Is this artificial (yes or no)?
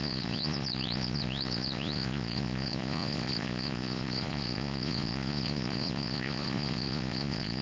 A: yes